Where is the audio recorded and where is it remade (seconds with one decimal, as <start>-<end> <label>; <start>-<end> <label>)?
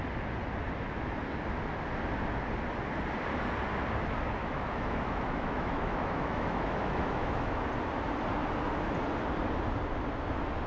0.0-4.4 recorded; 4.4-7.6 remade; 7.6-10.7 recorded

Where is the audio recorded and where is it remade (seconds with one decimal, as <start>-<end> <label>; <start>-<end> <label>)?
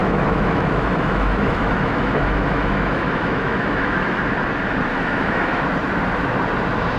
0.0-4.2 remade; 4.2-4.9 recorded; 4.9-5.6 remade; 5.6-7.0 recorded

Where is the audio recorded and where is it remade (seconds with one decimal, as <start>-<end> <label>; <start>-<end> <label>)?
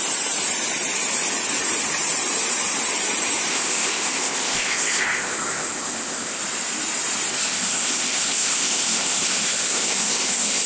0.0-3.5 recorded; 3.5-6.4 remade; 6.4-7.3 recorded; 7.3-10.7 remade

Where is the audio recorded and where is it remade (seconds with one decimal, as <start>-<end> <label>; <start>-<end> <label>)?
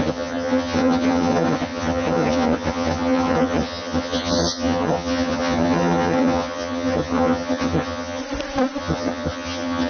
0.0-8.2 remade; 8.2-8.8 recorded; 8.8-9.9 remade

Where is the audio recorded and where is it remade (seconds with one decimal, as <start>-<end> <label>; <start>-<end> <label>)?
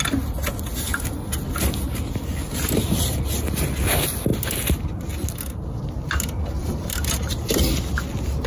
0.0-6.6 recorded; 6.6-7.3 remade; 7.3-8.5 recorded